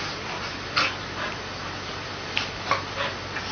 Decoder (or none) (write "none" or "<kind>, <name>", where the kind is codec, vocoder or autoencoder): none